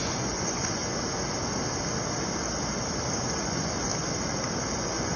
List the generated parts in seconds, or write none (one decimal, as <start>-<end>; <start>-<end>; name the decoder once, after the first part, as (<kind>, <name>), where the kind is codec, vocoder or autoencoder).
0.0-0.8 (vocoder, Vocos); 3.4-3.9; 4.8-5.2